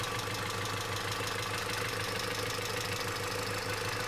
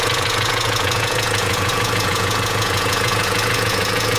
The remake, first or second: second